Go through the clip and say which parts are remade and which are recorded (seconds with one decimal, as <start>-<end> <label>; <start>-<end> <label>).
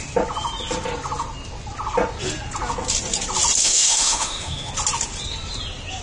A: 0.0-3.6 recorded; 3.6-4.7 remade; 4.7-6.0 recorded